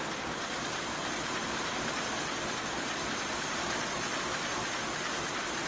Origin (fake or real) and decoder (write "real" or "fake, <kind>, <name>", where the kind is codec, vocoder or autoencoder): real